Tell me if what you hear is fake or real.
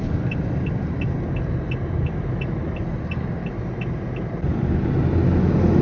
real